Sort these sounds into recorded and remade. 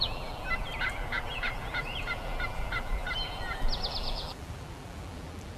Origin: remade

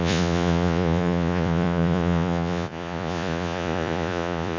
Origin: remade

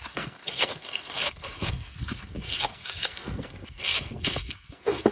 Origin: remade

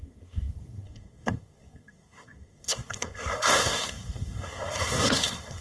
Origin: remade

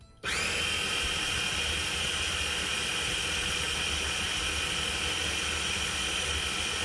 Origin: recorded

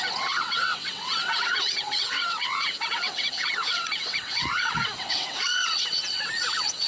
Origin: remade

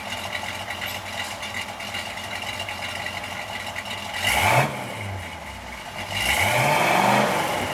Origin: recorded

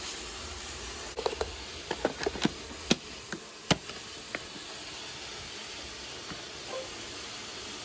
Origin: recorded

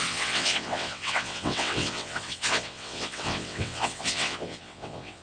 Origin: remade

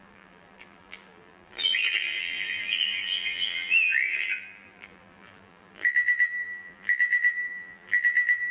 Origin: remade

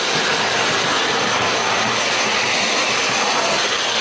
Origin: recorded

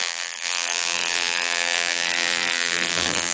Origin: remade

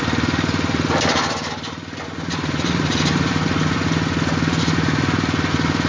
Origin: recorded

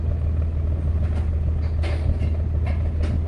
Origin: recorded